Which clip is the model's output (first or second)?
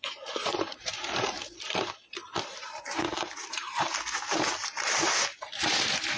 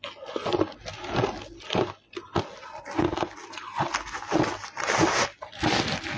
first